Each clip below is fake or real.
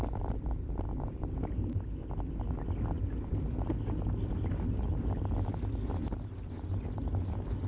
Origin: real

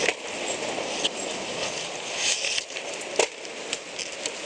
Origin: real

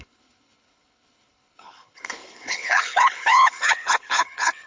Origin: fake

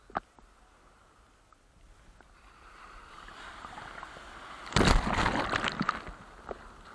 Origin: real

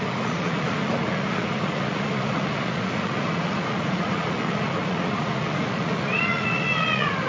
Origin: fake